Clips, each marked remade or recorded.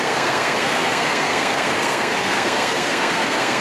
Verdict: remade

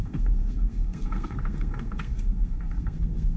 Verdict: remade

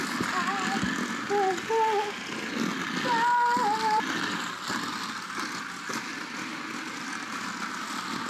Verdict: recorded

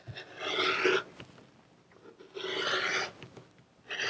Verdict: recorded